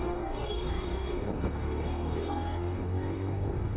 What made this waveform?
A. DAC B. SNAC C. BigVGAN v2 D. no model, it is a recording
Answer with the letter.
A